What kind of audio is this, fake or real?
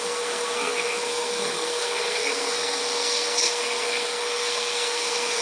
fake